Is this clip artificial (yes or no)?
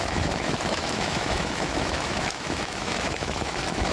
yes